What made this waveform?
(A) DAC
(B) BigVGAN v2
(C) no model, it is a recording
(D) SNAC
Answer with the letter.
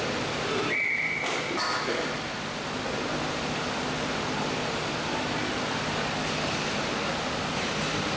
C